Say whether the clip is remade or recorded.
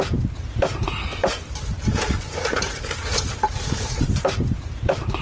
recorded